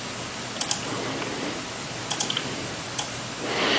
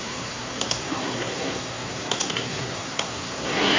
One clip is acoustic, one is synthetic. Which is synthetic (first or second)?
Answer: second